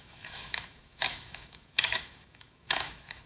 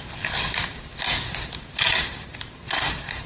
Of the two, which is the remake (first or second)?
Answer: first